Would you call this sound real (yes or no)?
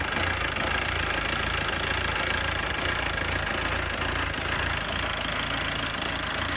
yes